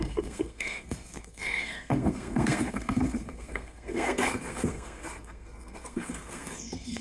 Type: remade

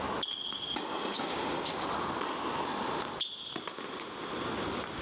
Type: recorded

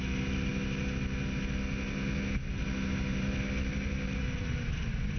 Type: recorded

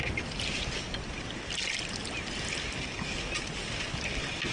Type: recorded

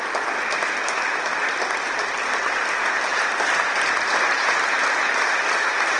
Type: recorded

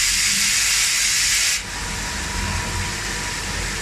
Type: recorded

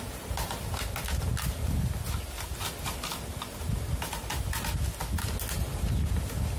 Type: recorded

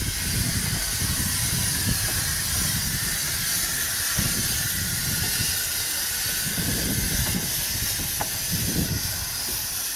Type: recorded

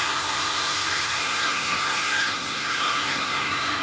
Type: remade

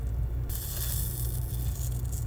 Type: recorded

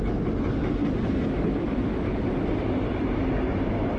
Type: recorded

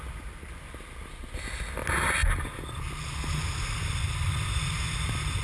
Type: recorded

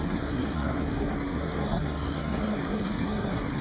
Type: remade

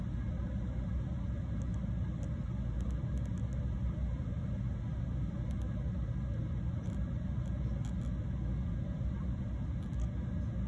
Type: recorded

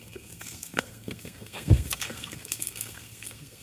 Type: remade